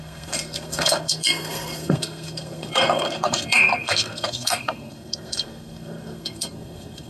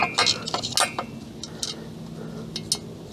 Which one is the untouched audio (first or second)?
second